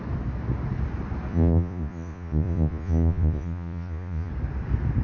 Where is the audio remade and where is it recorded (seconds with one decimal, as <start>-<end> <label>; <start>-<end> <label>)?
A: 0.0-1.3 recorded; 1.3-4.3 remade; 4.3-5.0 recorded